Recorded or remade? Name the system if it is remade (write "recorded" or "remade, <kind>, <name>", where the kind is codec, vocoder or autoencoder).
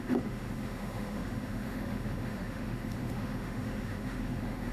remade, autoencoder, DAC-VAE